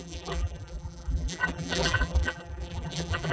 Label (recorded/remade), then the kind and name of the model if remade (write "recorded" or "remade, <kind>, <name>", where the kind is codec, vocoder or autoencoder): remade, vocoder, BigVGAN v2